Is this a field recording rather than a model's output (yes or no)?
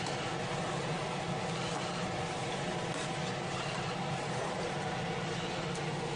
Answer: yes